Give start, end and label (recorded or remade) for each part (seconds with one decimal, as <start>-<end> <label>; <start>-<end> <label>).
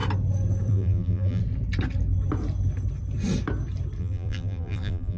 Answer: 0.0-0.7 recorded; 0.7-1.4 remade; 1.4-4.0 recorded; 4.0-5.2 remade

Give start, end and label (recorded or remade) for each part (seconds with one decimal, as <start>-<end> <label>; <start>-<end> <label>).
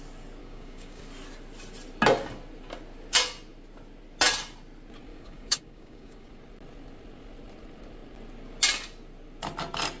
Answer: 0.0-0.4 recorded; 0.4-1.0 remade; 1.0-5.1 recorded; 5.1-6.3 remade; 6.3-10.0 recorded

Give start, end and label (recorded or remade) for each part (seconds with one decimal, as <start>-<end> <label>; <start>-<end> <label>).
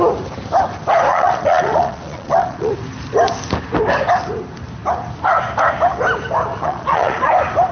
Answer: 0.0-1.1 recorded; 1.1-2.7 remade; 2.7-6.5 recorded; 6.5-7.3 remade; 7.3-7.7 recorded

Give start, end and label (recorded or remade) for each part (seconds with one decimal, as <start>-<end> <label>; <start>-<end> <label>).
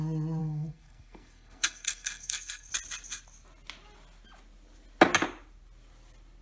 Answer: 0.0-0.4 recorded; 0.4-2.7 remade; 2.7-6.4 recorded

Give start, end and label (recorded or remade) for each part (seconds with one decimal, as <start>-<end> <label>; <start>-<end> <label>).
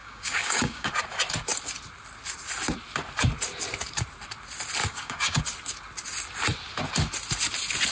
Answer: 0.0-0.9 remade; 0.9-4.8 recorded; 4.8-5.4 remade; 5.4-7.9 recorded